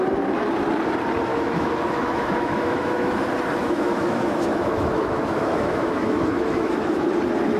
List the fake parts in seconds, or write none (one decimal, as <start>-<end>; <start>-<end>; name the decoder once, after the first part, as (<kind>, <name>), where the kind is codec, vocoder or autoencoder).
1.3-3.2 (autoencoder, DAC-VAE); 3.6-7.1